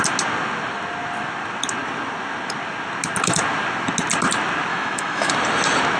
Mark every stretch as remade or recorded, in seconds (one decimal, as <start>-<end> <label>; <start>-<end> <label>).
0.0-4.7 recorded; 4.7-5.3 remade; 5.3-6.0 recorded